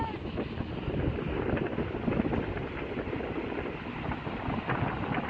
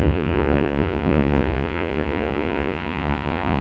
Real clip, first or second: first